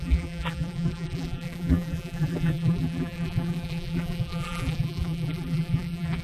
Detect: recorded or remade remade